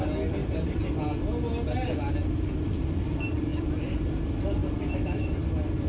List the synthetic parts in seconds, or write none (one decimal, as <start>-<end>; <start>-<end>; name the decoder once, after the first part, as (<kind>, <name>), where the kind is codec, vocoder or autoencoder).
0.4-0.9 (vocoder, BigVGAN v2); 3.5-4.1; 4.6-5.2